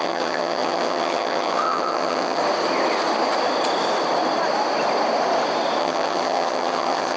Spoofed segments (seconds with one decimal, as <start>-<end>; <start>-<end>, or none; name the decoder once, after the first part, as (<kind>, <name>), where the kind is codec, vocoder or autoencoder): 0.0-2.4 (vocoder, HiFi-GAN); 5.8-7.2